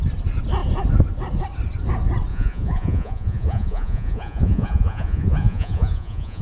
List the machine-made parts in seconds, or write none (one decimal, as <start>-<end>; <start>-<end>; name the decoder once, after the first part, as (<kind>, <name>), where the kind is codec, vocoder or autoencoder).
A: 2.3-6.4 (vocoder, Vocos)